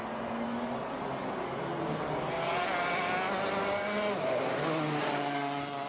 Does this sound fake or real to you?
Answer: real